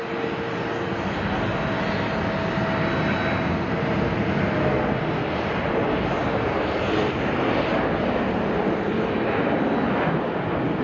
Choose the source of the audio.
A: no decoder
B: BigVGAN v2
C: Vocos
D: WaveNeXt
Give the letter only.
A